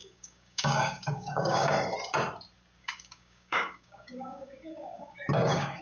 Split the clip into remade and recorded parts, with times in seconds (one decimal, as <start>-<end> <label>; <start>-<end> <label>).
0.0-1.7 remade; 1.7-2.8 recorded; 2.8-5.8 remade